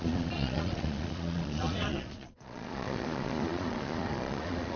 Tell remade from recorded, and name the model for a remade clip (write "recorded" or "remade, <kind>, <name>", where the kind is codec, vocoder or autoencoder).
remade, vocoder, Vocos